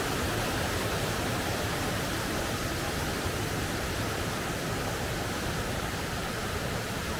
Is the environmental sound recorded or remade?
recorded